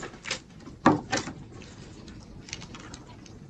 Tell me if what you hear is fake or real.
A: real